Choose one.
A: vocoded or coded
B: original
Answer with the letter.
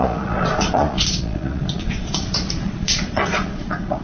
A